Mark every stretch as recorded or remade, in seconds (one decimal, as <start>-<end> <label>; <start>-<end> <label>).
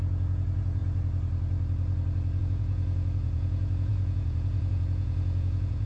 0.0-0.8 remade; 0.8-2.4 recorded; 2.4-5.9 remade